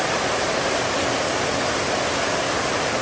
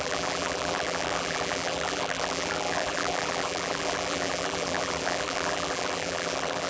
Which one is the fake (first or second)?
second